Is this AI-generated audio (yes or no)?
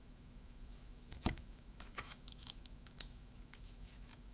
yes